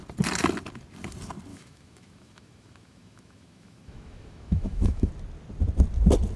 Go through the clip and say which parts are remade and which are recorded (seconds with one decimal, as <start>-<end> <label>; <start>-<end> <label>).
0.0-1.5 recorded; 1.5-5.1 remade; 5.1-6.4 recorded